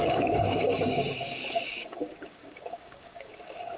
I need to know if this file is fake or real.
fake